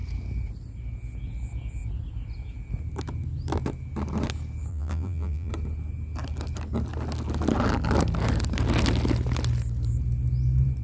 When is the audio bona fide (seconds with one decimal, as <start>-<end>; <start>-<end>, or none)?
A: 0.0-4.7; 5.5-10.8